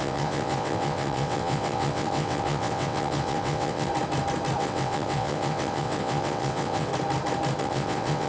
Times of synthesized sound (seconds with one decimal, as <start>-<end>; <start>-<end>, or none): 0.0-3.9; 4.6-6.9; 7.6-8.3